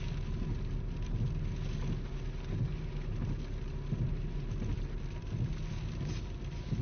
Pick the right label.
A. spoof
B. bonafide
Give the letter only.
B